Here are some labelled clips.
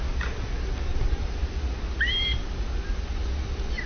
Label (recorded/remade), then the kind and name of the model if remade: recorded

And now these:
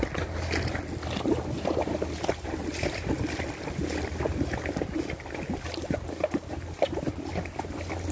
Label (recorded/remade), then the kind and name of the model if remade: recorded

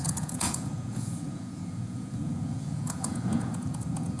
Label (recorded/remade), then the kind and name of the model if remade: remade, vocoder, Vocos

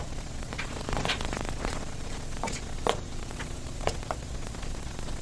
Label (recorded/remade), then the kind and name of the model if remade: remade, vocoder, Vocos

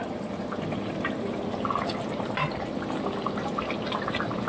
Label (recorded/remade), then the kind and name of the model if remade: recorded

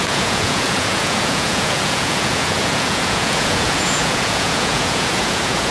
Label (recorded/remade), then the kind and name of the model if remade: remade, vocoder, Vocos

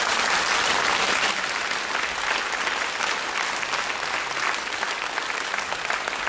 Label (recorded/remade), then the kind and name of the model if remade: recorded